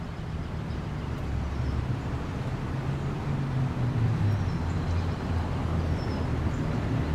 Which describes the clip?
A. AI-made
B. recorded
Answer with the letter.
B